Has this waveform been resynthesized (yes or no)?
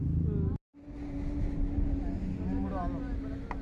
no